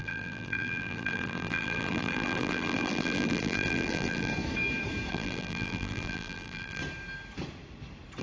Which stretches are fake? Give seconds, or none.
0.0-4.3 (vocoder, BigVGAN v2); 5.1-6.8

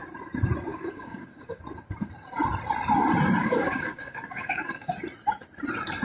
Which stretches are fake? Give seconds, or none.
0.7-1.6 (codec, DAC); 3.4-4.9

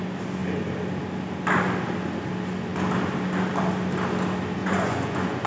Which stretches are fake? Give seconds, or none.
4.6-5.5 (vocoder, Vocos)

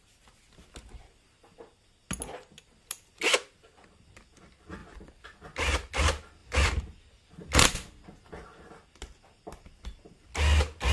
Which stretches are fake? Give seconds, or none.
none

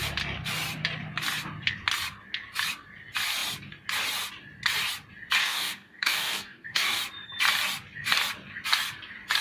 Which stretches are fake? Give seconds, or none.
5.4-7.0 (codec, DAC)

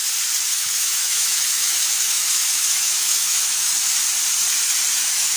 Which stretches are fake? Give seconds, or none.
0.5-3.9 (autoencoder, DAC-VAE); 5.0-5.4

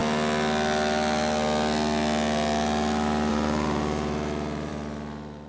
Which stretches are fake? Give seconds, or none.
3.3-4.7 (vocoder, BigVGAN v2)